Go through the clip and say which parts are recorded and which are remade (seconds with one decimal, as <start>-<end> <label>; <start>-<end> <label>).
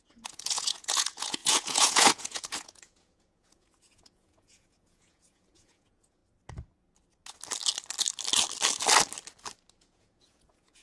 0.0-6.2 remade; 6.2-9.7 recorded; 9.7-10.8 remade